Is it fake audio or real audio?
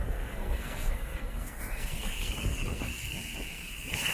fake